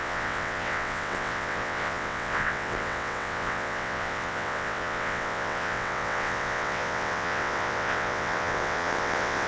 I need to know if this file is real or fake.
fake